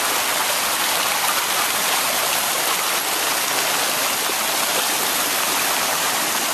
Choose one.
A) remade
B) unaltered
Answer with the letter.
B